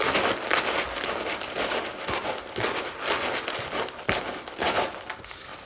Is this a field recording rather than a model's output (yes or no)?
yes